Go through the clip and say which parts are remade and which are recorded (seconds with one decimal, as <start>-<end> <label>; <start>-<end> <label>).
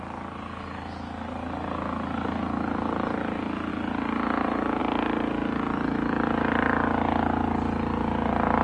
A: 0.0-8.6 recorded